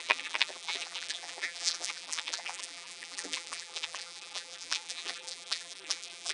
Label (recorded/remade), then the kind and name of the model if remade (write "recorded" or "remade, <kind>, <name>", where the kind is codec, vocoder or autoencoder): remade, vocoder, BigVGAN v2